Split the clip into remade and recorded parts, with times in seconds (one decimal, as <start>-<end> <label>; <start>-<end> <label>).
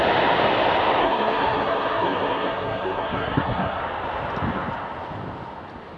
0.0-1.0 recorded; 1.0-3.8 remade; 3.8-6.0 recorded